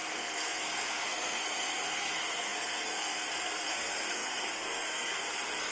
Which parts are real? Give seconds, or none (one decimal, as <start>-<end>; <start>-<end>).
none